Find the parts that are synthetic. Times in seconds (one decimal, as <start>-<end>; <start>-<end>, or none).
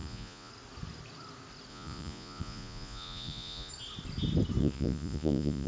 0.0-0.5; 1.7-3.7; 4.6-5.7